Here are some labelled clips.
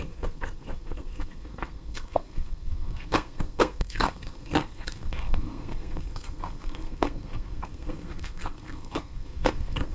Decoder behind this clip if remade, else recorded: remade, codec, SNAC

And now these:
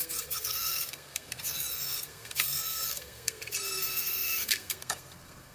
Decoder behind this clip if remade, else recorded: remade, codec, SNAC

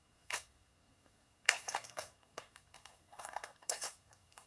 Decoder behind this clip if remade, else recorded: remade, codec, SNAC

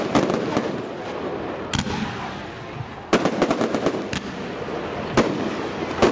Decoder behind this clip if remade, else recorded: recorded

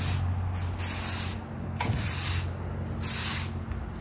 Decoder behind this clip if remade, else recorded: recorded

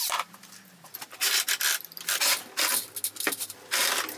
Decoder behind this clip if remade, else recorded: recorded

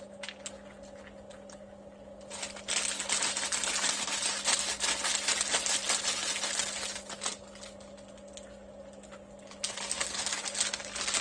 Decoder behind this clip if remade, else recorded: recorded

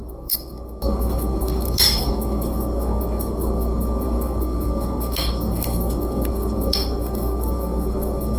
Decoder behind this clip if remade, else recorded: remade, codec, SNAC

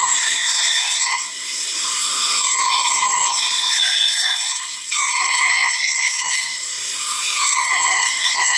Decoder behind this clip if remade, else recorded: remade, codec, SNAC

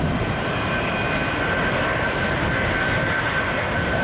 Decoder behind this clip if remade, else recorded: recorded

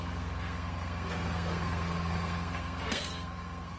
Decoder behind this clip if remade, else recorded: remade, codec, SNAC